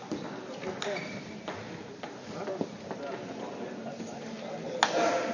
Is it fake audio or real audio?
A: real